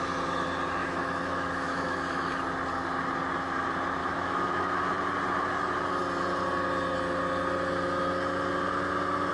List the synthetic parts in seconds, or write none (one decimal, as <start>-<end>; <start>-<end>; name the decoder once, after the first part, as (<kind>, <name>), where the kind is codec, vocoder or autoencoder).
0.8-2.4 (autoencoder, DAC-VAE); 4.0-4.9